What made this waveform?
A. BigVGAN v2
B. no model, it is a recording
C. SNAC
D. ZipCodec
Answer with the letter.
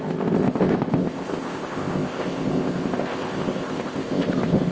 D